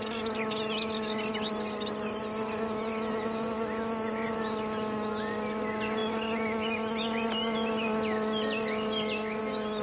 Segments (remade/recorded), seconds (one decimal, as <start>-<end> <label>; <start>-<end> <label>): 0.0-9.8 recorded